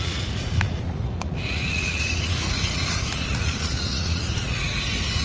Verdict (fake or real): fake